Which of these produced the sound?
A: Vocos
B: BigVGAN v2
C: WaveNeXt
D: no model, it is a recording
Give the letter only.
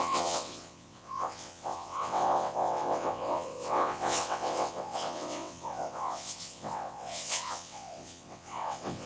C